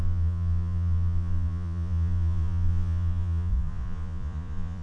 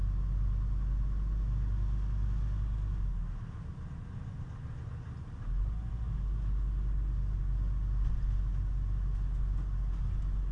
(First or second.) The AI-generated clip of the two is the first